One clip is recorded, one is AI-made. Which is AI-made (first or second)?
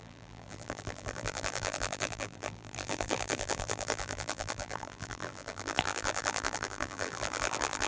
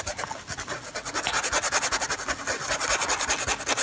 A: first